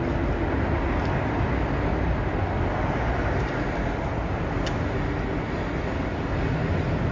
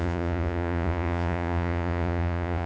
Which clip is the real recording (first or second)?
first